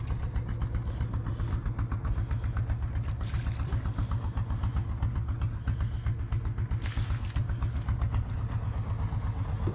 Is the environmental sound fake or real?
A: real